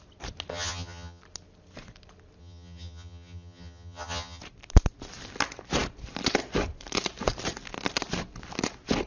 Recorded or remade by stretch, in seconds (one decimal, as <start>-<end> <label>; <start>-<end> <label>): 0.0-0.5 recorded; 0.5-1.2 remade; 1.2-2.4 recorded; 2.4-4.4 remade; 4.4-9.1 recorded